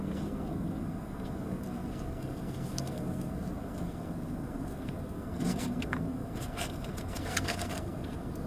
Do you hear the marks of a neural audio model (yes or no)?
yes